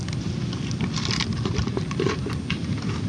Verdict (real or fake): real